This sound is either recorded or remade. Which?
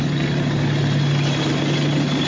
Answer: recorded